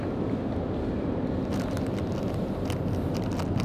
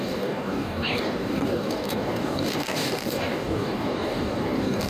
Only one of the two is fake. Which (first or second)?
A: second